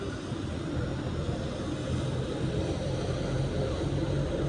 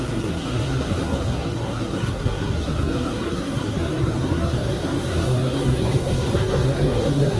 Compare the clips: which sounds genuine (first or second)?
first